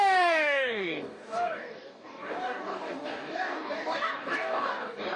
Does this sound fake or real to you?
fake